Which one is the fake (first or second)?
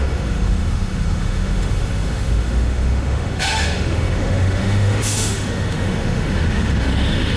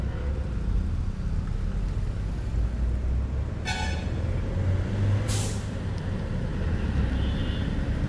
first